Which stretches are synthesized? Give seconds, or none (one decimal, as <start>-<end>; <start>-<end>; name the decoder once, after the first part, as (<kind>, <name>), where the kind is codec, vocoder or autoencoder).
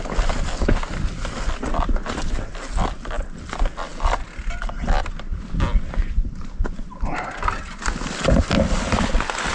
none